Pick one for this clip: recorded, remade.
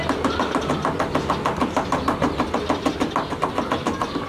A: recorded